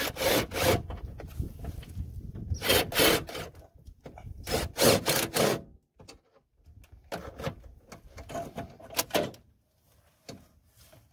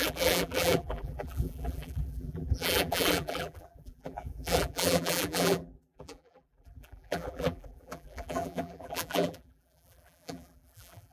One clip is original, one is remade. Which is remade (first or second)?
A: second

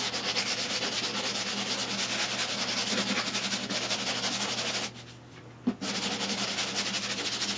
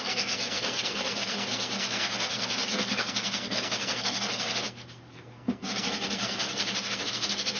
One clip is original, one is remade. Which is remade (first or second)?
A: second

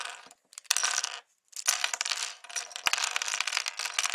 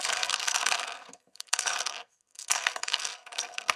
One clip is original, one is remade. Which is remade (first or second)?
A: second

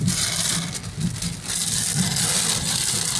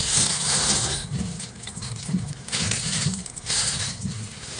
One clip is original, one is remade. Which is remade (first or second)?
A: second